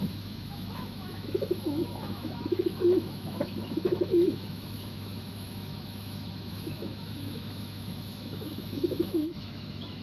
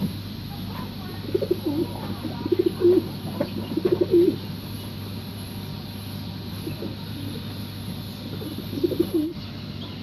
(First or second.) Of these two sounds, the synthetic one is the first